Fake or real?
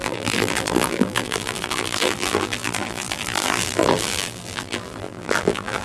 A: fake